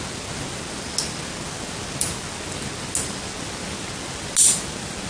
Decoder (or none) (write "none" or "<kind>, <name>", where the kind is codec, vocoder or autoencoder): none